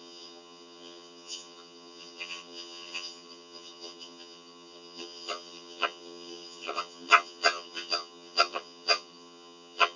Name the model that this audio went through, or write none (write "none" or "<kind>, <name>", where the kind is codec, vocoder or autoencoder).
vocoder, HiFi-GAN